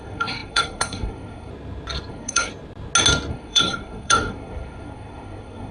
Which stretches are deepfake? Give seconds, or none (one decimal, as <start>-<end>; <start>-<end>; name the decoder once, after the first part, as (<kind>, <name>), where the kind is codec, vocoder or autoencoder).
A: 0.0-1.5 (codec, SNAC); 2.1-2.5; 3.3-5.7